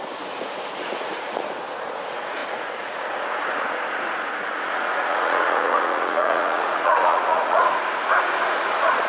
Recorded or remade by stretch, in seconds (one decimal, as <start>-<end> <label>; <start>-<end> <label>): 0.0-9.1 remade